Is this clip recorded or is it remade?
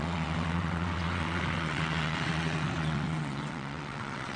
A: remade